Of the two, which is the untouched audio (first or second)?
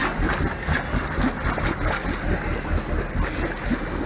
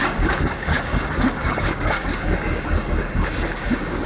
first